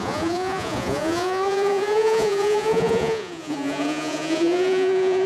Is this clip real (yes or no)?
no